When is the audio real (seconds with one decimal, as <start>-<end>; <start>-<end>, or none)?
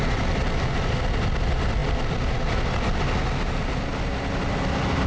0.0-5.1